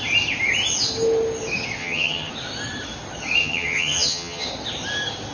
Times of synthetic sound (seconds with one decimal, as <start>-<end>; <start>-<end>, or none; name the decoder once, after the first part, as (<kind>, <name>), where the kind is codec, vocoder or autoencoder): 1.8-2.3 (vocoder, HiFi-GAN); 3.4-4.5

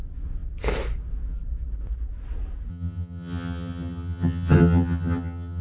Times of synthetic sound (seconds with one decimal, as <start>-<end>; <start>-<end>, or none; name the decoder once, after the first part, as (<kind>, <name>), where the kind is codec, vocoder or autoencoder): 2.7-5.6 (vocoder, HiFi-GAN)

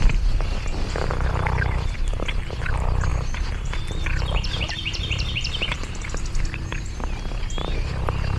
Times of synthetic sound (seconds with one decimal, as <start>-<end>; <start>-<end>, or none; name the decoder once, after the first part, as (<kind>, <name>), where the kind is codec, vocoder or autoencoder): 3.1-6.1 (vocoder, BigVGAN v2)

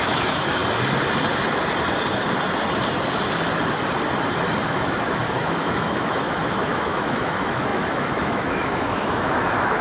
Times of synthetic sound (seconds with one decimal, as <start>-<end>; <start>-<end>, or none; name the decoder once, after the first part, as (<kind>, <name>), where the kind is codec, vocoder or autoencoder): 0.0-0.6 (autoencoder, DAC-VAE); 4.6-9.8

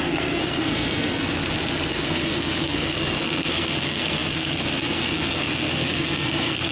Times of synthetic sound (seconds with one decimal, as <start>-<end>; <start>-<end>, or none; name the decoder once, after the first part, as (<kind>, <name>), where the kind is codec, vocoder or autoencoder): 0.0-1.4 (codec, SNAC); 1.9-6.7